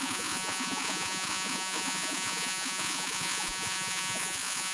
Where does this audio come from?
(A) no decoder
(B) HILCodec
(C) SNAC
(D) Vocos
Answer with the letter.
D